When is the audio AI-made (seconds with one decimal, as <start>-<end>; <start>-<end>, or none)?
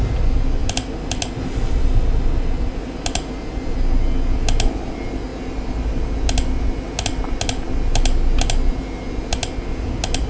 none